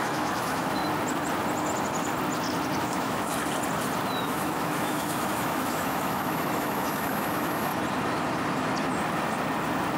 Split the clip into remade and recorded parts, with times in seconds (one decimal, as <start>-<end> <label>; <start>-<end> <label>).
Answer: 0.0-0.8 remade; 0.8-2.8 recorded; 2.8-3.4 remade; 3.4-4.2 recorded; 4.2-7.7 remade; 7.7-10.0 recorded